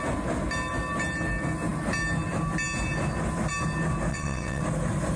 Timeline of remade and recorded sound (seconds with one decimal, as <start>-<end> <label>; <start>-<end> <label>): 0.0-4.1 recorded; 4.1-4.6 remade; 4.6-5.2 recorded